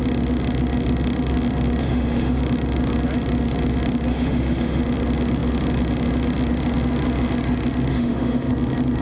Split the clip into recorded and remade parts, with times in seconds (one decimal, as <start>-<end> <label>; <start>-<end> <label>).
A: 0.0-1.8 recorded; 1.8-2.4 remade; 2.4-4.1 recorded; 4.1-4.8 remade; 4.8-7.9 recorded; 7.9-8.5 remade; 8.5-9.0 recorded